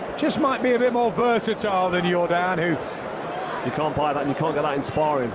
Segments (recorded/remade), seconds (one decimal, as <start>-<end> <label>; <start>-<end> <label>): 0.0-5.3 recorded